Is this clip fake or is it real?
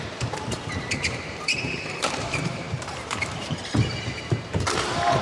fake